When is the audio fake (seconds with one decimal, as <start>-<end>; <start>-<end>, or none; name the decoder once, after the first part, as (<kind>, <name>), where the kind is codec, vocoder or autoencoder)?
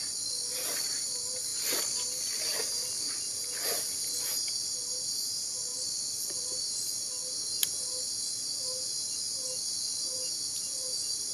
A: none